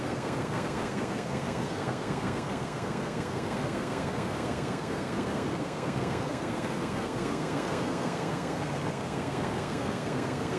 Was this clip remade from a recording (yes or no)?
yes